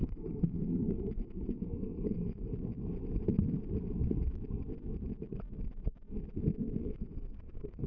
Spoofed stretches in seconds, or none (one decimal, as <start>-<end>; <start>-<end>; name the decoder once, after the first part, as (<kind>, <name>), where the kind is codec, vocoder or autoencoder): 0.0-2.5 (codec, SNAC); 6.8-7.9